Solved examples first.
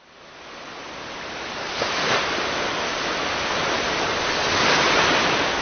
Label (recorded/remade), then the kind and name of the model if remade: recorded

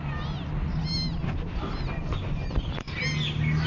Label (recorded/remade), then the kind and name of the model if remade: recorded